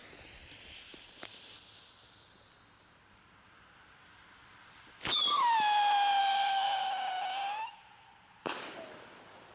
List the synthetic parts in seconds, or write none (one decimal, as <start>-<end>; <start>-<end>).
6.2-6.9